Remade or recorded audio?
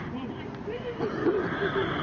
remade